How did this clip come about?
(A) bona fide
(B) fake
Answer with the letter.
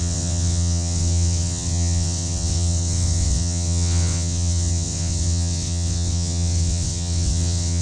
B